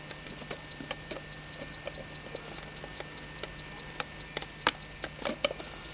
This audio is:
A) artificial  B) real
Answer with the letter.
B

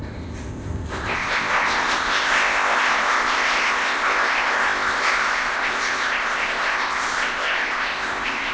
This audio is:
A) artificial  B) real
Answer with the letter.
A